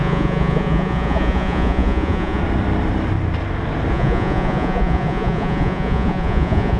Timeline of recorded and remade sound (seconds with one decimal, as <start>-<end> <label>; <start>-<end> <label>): 0.0-2.4 remade; 2.4-3.9 recorded; 3.9-6.8 remade